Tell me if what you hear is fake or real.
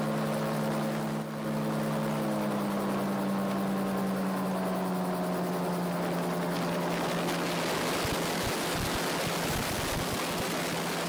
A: real